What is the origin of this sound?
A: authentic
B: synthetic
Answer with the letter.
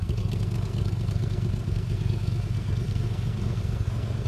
B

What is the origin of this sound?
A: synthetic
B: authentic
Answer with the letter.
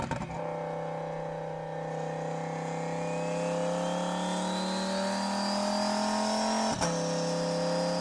B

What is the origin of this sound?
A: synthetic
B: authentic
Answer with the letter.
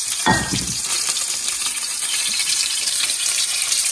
A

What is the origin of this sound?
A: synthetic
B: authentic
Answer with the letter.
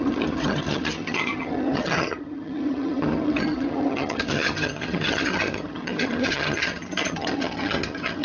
A